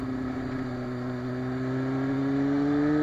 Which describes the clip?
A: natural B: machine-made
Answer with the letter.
A